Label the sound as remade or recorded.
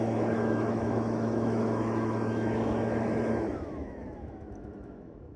remade